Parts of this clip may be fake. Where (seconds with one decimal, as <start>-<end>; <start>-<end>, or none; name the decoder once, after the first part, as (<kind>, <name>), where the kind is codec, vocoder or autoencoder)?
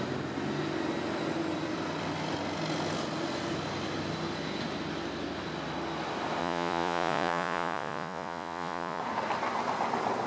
6.4-9.0 (vocoder, Vocos)